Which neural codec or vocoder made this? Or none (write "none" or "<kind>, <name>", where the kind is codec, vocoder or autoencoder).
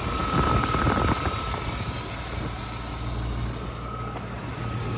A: none